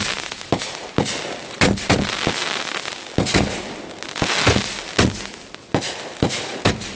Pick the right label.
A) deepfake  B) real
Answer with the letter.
B